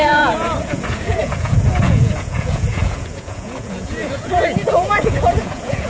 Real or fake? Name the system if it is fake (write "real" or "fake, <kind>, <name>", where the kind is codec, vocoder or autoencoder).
fake, vocoder, Vocos